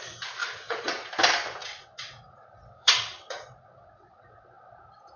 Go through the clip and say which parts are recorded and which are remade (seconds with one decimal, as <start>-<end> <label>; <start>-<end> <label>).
0.0-0.4 recorded; 0.4-1.1 remade; 1.1-1.6 recorded; 1.6-4.7 remade; 4.7-5.2 recorded